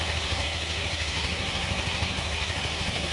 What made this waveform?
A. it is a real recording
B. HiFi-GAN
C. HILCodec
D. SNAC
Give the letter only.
D